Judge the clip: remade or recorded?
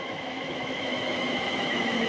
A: remade